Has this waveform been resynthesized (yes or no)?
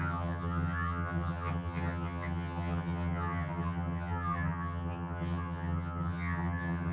yes